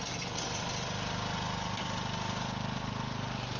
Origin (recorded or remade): recorded